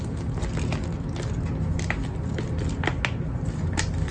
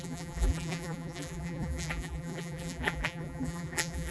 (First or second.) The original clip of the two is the first